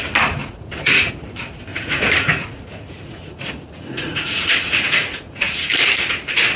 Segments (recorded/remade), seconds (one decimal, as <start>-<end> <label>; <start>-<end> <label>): 0.0-0.4 recorded; 0.4-1.1 remade; 1.1-1.7 recorded; 1.7-5.7 remade; 5.7-6.6 recorded